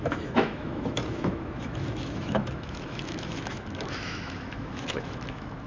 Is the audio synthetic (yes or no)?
yes